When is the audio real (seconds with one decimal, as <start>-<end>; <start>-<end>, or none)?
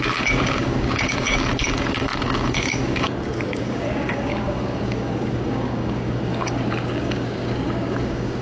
none